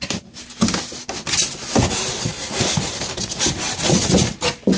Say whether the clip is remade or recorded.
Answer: recorded